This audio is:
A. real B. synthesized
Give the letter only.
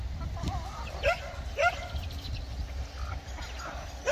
A